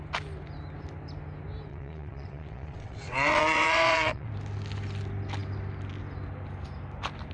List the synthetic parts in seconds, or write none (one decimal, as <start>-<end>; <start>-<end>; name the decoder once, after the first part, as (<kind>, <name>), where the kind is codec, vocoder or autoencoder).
1.7-4.3 (vocoder, WaveNeXt)